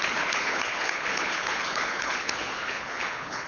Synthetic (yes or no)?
yes